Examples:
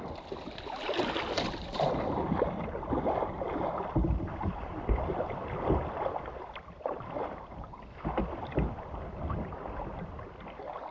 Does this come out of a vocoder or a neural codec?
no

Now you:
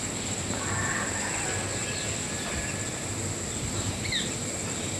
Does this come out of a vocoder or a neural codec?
no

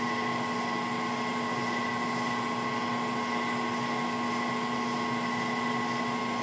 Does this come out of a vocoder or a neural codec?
no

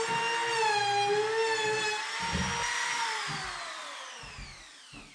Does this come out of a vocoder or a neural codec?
no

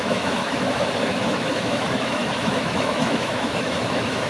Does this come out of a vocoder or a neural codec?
yes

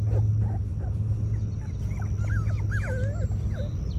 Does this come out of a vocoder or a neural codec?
no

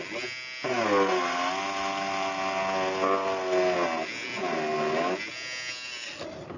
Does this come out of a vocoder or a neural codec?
no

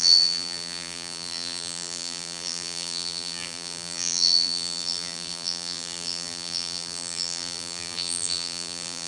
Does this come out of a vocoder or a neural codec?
yes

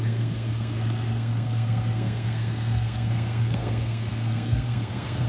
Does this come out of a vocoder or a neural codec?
yes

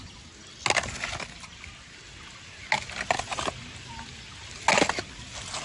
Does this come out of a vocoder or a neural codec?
no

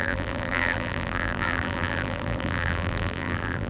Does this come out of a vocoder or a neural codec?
yes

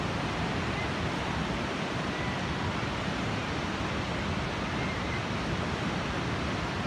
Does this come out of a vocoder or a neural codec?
no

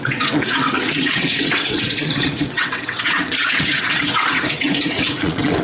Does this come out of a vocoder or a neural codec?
yes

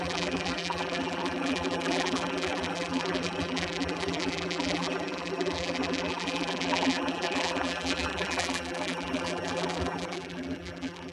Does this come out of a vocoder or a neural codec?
yes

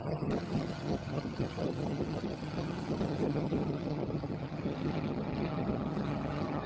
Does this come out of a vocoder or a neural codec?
yes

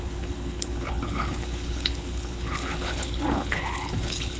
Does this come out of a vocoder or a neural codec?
yes